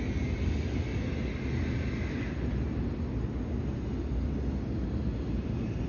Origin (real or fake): real